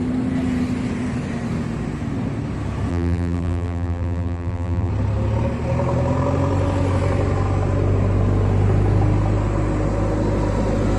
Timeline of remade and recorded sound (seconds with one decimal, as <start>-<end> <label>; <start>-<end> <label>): 0.0-2.9 recorded; 2.9-4.9 remade; 4.9-11.0 recorded